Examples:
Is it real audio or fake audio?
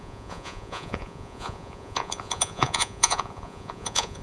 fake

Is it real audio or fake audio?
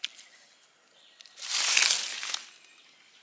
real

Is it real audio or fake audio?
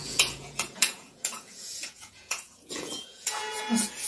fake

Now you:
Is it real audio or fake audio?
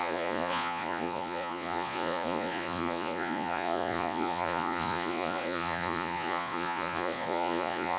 fake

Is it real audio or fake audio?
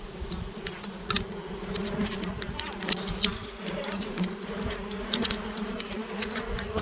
fake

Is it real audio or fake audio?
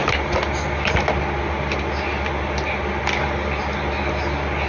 real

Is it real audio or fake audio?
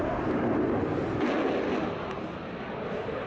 real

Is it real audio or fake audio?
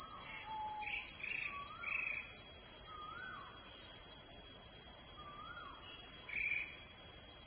real